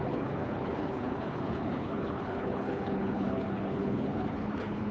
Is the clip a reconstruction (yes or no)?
yes